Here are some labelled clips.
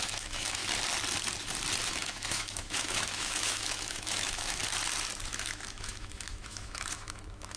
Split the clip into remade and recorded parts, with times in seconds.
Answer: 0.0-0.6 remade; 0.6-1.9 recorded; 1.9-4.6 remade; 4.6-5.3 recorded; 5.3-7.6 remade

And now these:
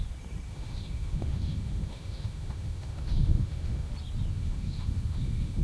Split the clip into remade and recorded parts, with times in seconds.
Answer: 0.0-0.5 recorded; 0.5-3.9 remade; 3.9-4.3 recorded; 4.3-5.6 remade

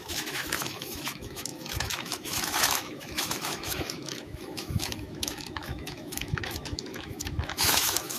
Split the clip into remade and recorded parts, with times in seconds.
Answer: 0.0-8.2 remade

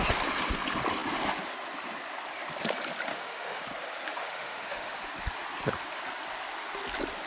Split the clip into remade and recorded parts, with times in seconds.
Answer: 0.0-3.1 recorded; 3.1-3.6 remade; 3.6-4.1 recorded; 4.1-5.0 remade; 5.0-7.3 recorded

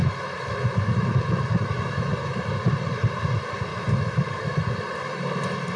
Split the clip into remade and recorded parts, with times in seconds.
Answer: 0.0-2.4 remade; 2.4-3.7 recorded; 3.7-4.6 remade; 4.6-5.8 recorded